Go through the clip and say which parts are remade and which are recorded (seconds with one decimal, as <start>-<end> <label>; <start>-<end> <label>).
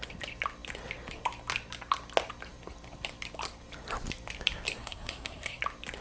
0.0-4.8 recorded; 4.8-5.6 remade; 5.6-6.0 recorded